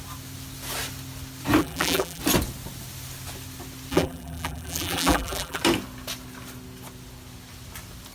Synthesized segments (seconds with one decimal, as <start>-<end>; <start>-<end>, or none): 1.6-2.2; 3.9-5.6